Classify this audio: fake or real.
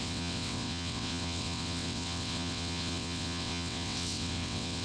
fake